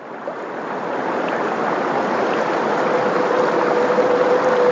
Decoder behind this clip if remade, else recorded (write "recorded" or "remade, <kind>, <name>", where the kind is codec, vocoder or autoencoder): recorded